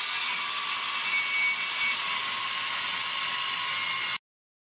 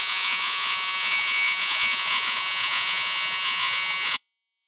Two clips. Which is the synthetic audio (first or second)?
second